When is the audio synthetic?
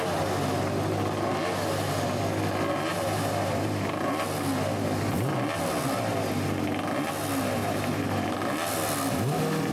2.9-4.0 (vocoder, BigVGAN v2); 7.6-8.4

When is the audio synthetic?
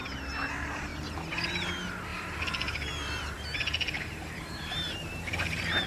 2.1-5.9 (vocoder, BigVGAN v2)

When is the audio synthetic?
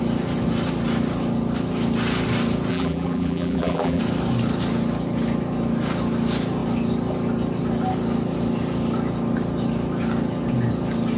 2.7-4.0 (vocoder, BigVGAN v2)